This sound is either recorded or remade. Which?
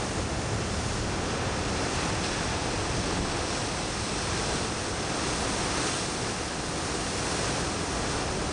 recorded